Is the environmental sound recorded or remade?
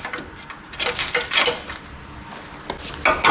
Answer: recorded